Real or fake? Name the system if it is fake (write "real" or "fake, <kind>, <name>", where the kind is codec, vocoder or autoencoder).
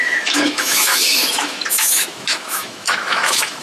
fake, autoencoder, DAC-VAE